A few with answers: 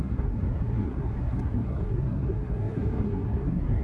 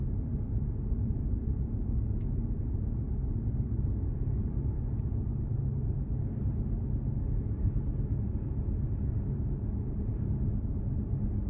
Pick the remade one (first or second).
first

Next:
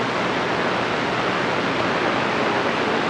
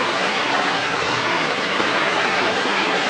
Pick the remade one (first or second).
second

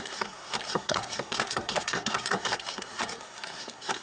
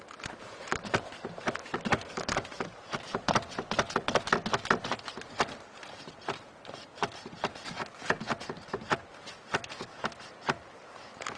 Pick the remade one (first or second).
first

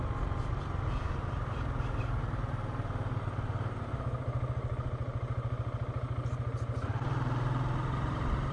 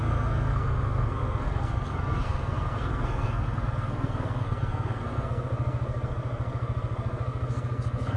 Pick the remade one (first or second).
second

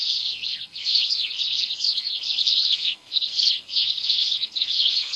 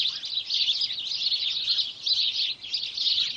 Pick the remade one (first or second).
first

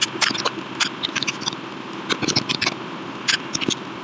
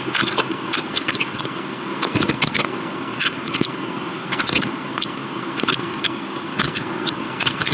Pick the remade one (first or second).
second